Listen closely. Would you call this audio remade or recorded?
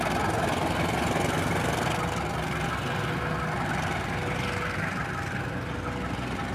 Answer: recorded